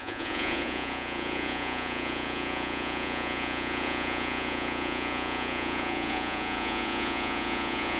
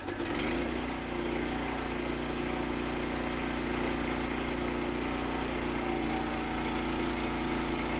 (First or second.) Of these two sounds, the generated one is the first